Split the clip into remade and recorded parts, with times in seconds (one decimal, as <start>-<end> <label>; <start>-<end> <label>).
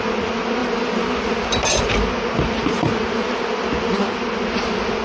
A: 0.0-5.0 recorded